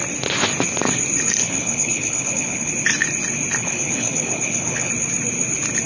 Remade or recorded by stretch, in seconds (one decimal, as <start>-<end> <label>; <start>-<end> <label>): 0.0-1.4 recorded; 1.4-2.7 remade; 2.7-3.6 recorded; 3.6-4.9 remade; 4.9-5.9 recorded